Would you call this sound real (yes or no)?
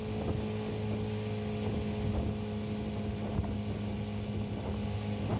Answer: yes